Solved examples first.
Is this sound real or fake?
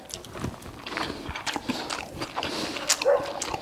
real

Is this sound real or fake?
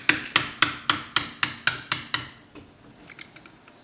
real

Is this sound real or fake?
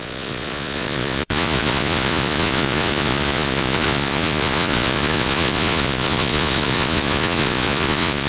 fake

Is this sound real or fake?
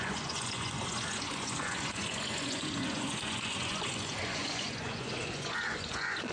fake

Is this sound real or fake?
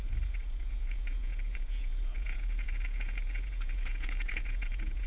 fake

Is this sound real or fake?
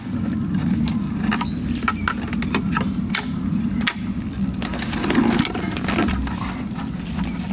real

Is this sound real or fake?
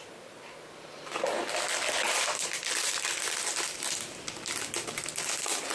real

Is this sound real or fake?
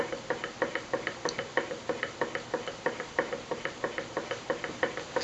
real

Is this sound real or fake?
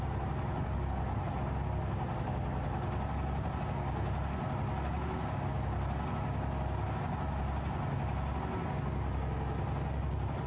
real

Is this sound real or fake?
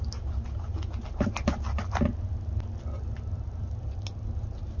real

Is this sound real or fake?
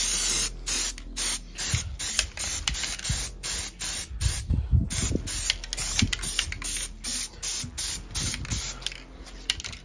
real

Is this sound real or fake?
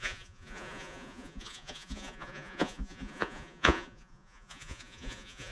fake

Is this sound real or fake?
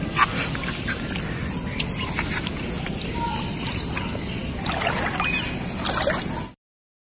real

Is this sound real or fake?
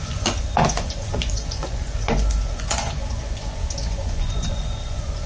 fake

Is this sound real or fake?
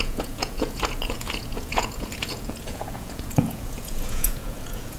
fake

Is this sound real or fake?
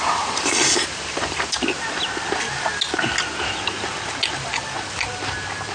real